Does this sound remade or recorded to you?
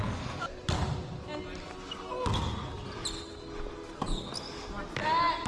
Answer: recorded